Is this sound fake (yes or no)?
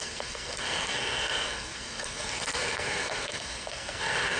yes